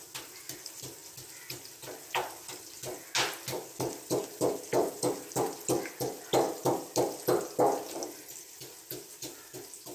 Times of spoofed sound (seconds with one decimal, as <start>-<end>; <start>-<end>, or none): none